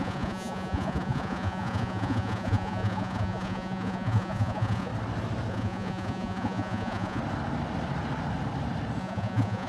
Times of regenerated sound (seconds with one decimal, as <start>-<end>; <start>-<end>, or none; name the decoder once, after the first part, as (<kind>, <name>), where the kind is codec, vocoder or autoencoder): 0.0-4.9 (vocoder, Vocos); 5.5-7.2; 9.0-9.7